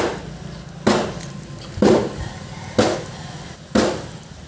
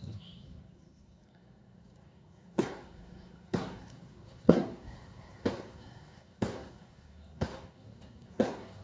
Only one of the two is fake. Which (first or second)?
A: second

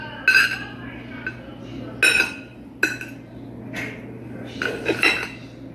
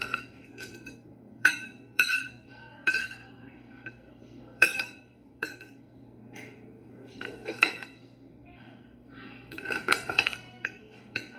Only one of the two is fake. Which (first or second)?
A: second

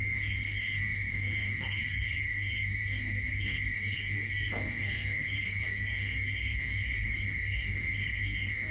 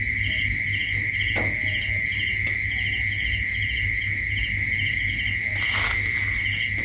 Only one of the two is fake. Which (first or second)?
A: first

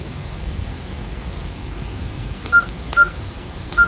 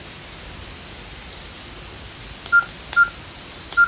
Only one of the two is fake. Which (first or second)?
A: first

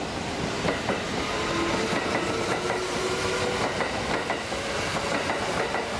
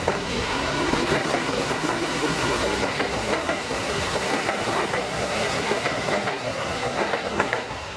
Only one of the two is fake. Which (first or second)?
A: second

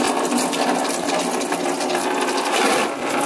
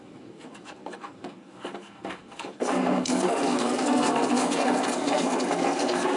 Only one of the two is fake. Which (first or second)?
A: second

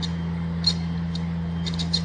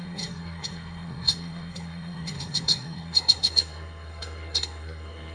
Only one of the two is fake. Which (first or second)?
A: second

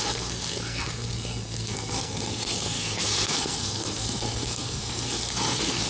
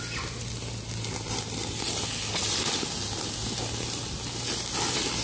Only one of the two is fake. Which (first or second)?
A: first